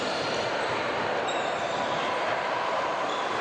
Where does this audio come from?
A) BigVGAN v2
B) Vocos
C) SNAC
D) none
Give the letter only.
A